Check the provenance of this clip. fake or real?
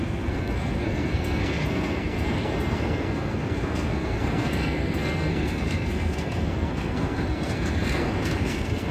fake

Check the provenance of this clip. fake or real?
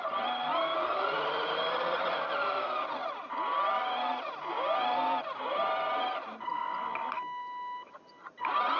real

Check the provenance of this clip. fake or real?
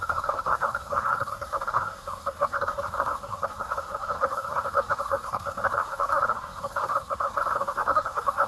fake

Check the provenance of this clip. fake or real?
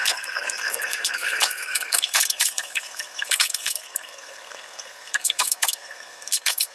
fake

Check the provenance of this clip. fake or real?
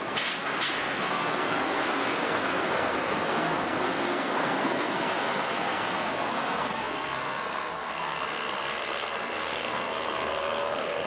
fake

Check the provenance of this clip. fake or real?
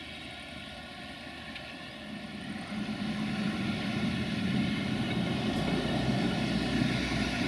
real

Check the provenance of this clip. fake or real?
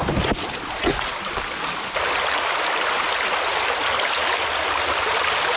real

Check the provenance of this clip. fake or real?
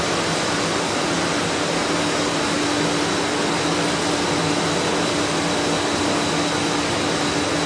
real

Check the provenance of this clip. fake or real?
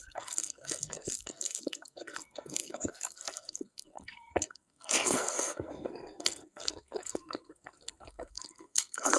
fake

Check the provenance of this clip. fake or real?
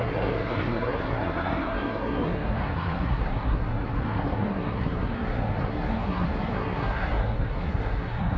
fake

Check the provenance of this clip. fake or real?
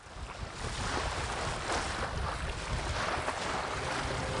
real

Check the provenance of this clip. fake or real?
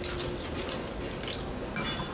real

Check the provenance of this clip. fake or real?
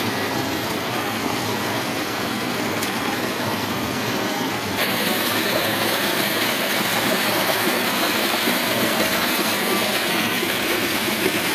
fake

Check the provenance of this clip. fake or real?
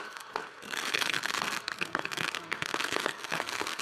fake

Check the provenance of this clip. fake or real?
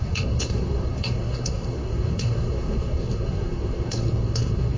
fake